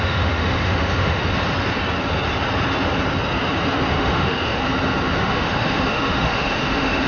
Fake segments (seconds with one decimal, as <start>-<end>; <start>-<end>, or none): 0.0-1.2; 3.9-4.6; 5.2-7.1